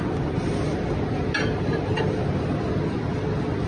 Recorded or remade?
recorded